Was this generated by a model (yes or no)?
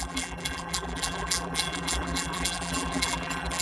yes